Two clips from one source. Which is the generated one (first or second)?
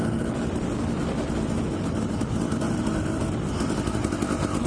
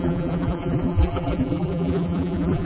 second